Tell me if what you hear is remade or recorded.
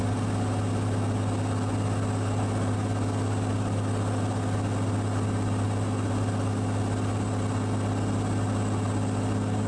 recorded